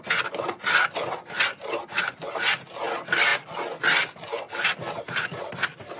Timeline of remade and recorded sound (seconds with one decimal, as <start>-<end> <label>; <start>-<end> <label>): 0.0-6.0 recorded